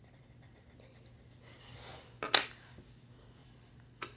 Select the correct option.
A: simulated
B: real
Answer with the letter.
B